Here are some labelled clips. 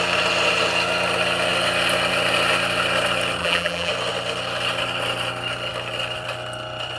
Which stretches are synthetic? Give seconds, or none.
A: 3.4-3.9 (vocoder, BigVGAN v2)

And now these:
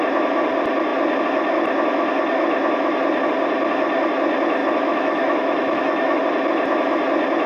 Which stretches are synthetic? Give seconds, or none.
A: 4.6-6.2 (autoencoder, DAC-VAE)

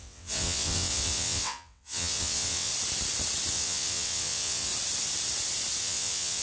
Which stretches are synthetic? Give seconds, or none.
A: 0.0-2.7 (vocoder, WaveNeXt); 3.5-4.7; 5.8-6.4

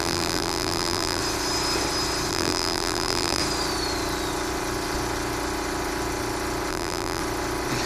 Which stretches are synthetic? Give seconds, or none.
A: 0.0-1.2 (vocoder, BigVGAN v2); 2.3-3.4; 6.7-7.2

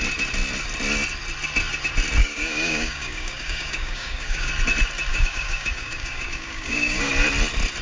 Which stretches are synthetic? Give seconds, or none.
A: 2.2-4.5 (codec, DAC); 5.1-7.1

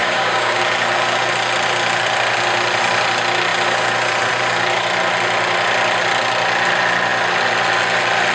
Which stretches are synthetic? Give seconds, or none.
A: 0.0-0.6 (codec, DAC)

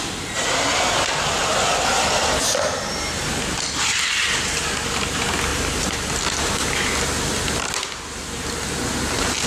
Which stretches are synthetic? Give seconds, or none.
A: none

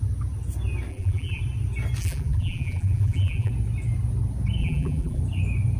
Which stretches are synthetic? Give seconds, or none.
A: 0.9-1.4 (vocoder, BigVGAN v2); 2.0-3.5; 4.6-5.2